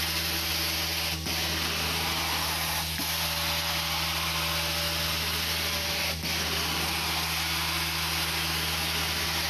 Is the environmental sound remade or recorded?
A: recorded